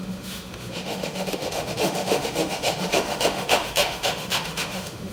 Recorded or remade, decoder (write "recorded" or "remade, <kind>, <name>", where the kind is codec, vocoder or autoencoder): remade, autoencoder, DAC-VAE